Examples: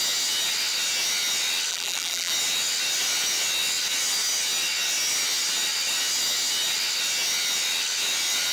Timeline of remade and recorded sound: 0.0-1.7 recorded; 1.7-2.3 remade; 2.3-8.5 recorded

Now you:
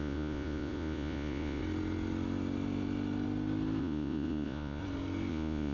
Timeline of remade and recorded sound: 0.0-1.6 remade; 1.6-3.8 recorded; 3.8-4.8 remade; 4.8-5.3 recorded; 5.3-5.7 remade

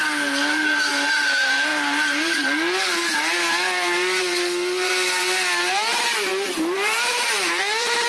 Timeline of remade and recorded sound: 0.0-0.9 recorded; 0.9-8.1 remade

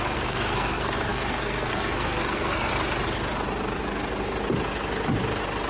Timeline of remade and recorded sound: 0.0-2.7 remade; 2.7-5.7 recorded